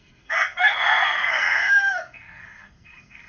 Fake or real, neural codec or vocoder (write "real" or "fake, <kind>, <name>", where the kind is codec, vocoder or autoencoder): fake, codec, SNAC